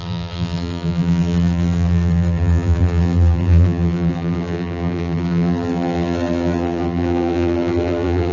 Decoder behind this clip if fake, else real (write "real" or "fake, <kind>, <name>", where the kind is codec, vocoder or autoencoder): fake, vocoder, BigVGAN v2